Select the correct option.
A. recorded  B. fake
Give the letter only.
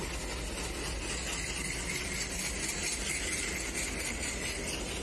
A